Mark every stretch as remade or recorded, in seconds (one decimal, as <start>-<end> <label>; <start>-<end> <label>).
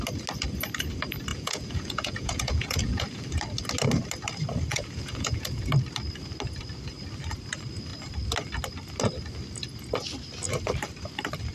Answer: 0.0-1.3 recorded; 1.3-3.2 remade; 3.2-4.7 recorded; 4.7-5.7 remade; 5.7-11.5 recorded